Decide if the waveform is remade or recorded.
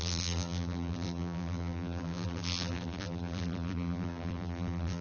remade